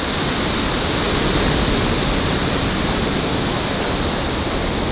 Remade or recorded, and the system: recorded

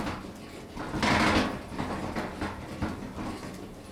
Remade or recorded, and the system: recorded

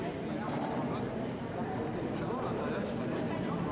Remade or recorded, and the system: recorded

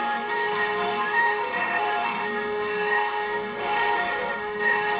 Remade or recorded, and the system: remade, autoencoder, DAC-VAE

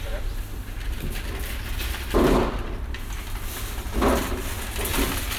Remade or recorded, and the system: recorded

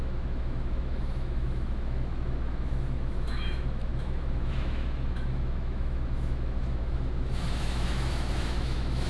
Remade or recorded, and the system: remade, autoencoder, DAC-VAE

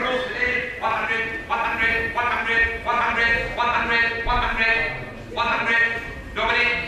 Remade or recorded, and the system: recorded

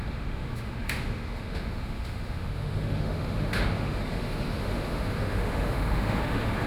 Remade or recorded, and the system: remade, autoencoder, DAC-VAE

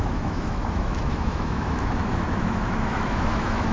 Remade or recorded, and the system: remade, autoencoder, DAC-VAE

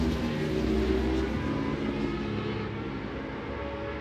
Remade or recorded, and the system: recorded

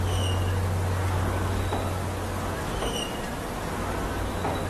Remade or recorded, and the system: recorded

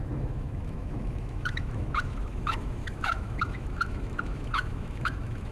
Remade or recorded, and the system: remade, autoencoder, DAC-VAE